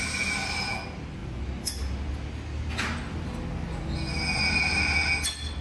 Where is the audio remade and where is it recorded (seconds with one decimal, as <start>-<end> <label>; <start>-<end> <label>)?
0.0-5.6 recorded